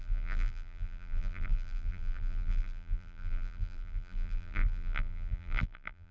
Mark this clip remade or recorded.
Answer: remade